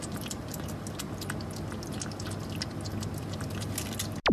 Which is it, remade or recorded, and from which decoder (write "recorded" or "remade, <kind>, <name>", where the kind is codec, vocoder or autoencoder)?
recorded